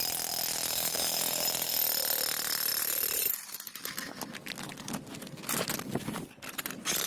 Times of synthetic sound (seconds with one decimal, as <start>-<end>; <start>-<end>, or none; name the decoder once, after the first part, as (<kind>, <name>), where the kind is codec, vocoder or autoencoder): 0.7-1.2 (codec, SNAC)